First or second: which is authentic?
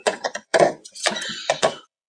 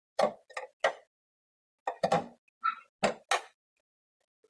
second